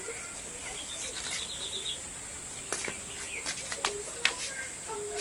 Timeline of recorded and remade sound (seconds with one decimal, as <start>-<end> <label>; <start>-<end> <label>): 0.0-5.2 recorded